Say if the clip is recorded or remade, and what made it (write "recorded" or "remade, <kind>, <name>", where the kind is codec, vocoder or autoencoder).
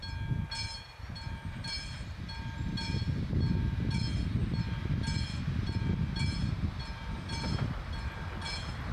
recorded